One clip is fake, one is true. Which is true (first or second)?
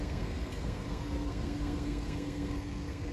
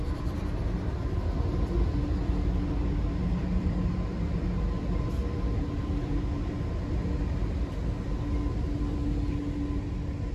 second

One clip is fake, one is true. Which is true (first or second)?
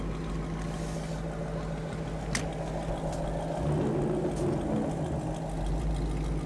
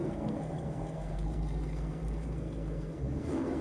first